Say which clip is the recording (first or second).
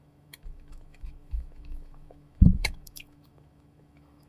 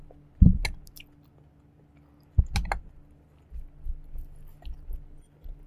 second